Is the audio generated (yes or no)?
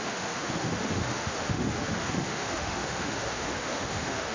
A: yes